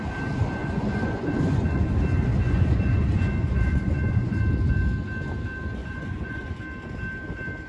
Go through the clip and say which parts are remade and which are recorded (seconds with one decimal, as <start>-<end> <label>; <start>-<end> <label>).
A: 0.0-0.6 recorded; 0.6-1.8 remade; 1.8-2.4 recorded; 2.4-4.4 remade; 4.4-5.8 recorded; 5.8-6.5 remade; 6.5-7.7 recorded